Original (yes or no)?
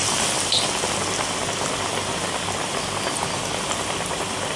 yes